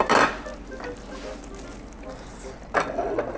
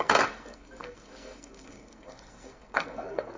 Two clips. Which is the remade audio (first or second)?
second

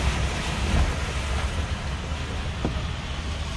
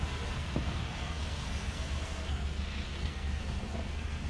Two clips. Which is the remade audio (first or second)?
second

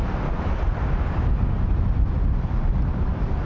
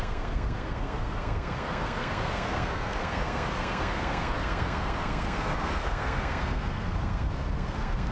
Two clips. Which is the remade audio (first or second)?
second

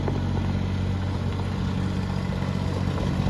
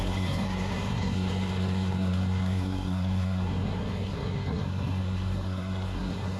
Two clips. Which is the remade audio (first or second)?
second